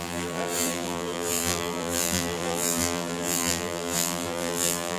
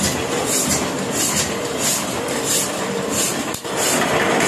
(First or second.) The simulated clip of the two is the first